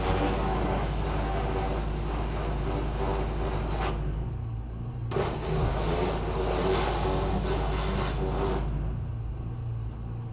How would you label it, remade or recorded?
recorded